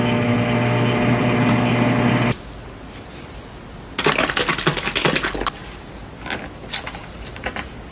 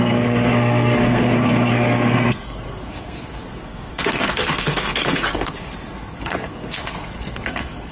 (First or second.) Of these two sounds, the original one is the first